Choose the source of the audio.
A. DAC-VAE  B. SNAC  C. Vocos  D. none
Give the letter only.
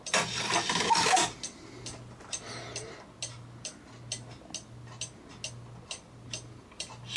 D